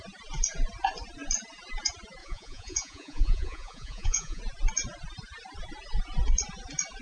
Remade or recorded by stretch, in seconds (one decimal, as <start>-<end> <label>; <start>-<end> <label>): 0.0-2.2 recorded; 2.2-4.4 remade; 4.4-7.0 recorded